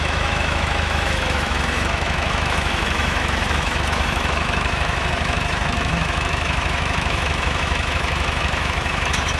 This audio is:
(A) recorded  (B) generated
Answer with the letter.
B